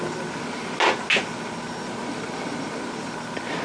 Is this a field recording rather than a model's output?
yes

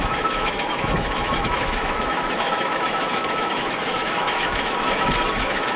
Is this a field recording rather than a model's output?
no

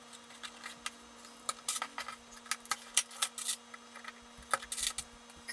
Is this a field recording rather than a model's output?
yes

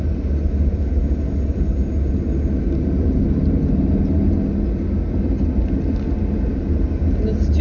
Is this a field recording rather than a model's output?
yes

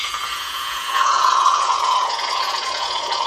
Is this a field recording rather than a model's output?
no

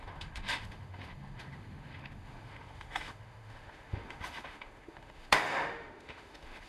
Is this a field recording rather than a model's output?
no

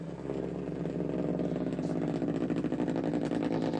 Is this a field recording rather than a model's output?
yes